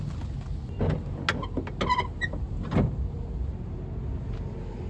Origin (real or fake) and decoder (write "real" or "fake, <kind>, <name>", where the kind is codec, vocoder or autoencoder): real